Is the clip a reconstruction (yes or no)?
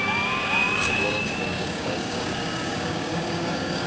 yes